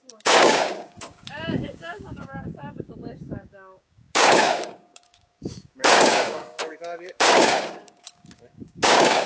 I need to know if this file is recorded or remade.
remade